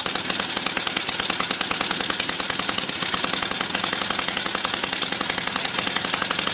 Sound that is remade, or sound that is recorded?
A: recorded